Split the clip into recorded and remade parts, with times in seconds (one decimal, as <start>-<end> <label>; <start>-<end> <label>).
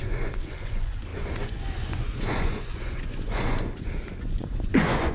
0.0-5.1 remade